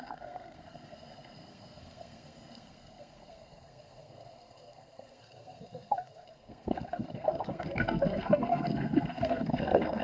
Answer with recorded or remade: remade